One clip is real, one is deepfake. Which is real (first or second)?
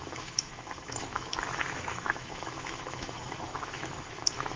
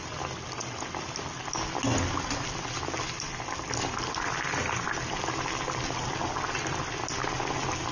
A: second